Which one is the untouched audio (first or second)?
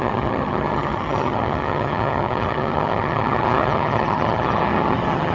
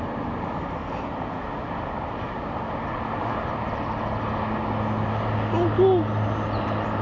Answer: second